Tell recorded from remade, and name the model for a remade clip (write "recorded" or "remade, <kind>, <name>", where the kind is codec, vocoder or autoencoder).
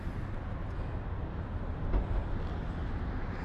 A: recorded